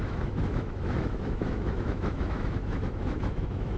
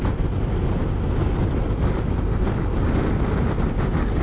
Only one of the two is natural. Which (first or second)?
second